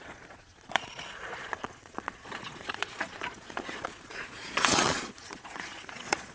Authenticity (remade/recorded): remade